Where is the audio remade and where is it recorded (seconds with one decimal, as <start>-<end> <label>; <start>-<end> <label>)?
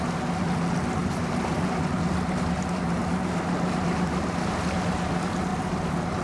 0.0-6.2 recorded